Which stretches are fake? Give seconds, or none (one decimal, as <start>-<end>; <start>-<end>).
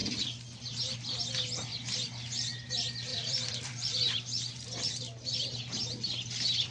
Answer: 0.0-0.6; 3.1-5.0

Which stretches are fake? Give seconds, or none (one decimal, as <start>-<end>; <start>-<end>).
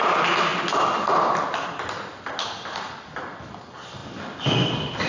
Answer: none